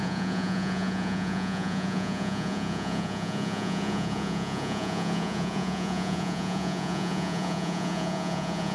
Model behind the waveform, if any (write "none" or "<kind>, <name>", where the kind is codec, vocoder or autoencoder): vocoder, Vocos